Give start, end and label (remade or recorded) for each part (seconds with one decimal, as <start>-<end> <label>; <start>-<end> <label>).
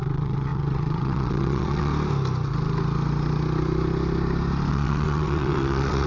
0.0-1.9 remade; 1.9-4.7 recorded; 4.7-6.1 remade